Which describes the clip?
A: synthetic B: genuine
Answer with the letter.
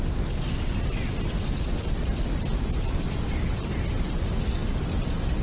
B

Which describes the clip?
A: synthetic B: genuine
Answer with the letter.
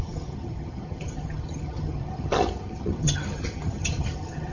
A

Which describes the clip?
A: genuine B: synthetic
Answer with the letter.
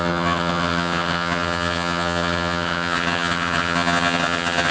B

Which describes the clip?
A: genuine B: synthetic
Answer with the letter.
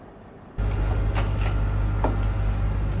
A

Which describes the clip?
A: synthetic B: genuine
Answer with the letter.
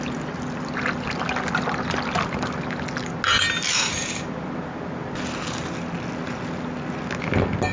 B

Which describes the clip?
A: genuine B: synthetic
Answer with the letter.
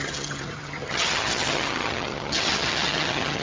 B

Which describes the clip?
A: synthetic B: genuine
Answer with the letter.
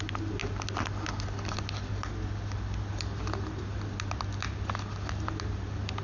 B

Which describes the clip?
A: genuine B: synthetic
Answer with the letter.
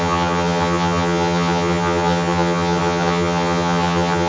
B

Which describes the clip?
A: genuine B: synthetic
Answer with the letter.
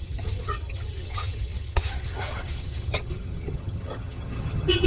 B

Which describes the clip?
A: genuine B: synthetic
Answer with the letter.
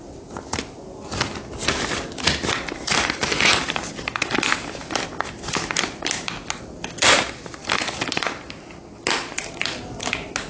A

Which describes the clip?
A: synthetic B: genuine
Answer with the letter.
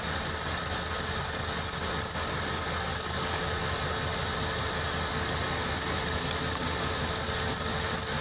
B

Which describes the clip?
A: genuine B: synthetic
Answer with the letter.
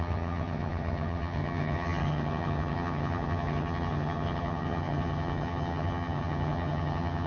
B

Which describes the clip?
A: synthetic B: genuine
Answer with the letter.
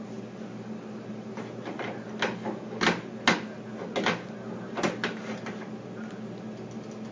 B